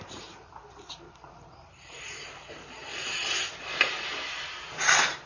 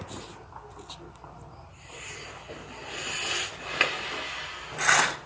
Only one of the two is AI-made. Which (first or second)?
first